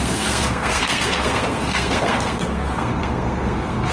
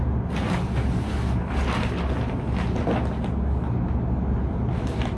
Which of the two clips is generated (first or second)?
first